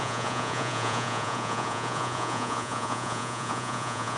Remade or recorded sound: remade